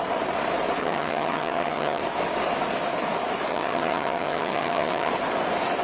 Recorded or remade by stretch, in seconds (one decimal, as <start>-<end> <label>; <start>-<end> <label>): 0.0-0.8 recorded; 0.8-2.0 remade; 2.0-3.5 recorded; 3.5-5.1 remade; 5.1-5.8 recorded